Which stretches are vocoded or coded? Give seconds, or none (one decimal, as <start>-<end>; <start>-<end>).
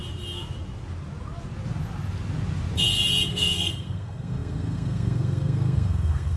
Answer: 3.3-6.4